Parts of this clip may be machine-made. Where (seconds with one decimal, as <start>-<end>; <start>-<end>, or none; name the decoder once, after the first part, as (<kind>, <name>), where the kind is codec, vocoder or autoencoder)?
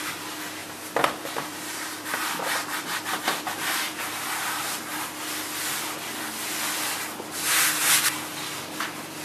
0.6-5.1 (vocoder, BigVGAN v2)